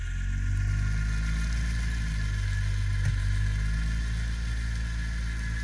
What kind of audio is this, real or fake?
real